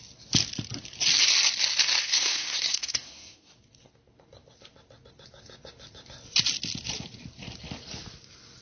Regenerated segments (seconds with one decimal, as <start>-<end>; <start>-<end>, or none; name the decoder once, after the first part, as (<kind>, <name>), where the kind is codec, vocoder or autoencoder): 2.0-3.5 (codec, SNAC)